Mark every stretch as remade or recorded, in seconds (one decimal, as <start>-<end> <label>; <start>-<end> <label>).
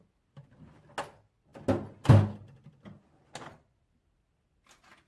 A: 0.0-5.1 recorded